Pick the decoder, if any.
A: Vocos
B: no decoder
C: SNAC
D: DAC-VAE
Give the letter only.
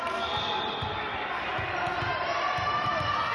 B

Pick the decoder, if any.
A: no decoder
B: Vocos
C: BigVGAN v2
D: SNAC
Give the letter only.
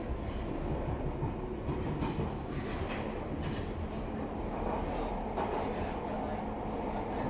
A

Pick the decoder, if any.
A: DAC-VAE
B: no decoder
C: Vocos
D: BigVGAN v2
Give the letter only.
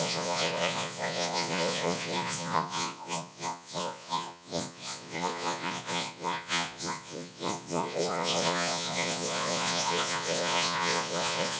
C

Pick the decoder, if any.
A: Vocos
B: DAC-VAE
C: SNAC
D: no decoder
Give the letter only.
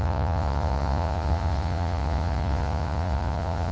A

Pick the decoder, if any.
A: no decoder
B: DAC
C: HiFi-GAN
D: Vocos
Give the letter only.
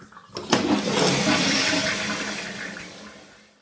A